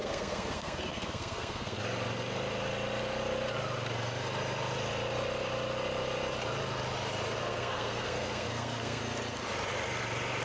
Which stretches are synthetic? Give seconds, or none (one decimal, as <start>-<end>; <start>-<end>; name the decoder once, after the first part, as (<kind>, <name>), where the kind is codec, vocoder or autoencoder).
0.0-1.8 (codec, SNAC); 7.4-9.0